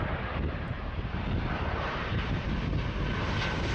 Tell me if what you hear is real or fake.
real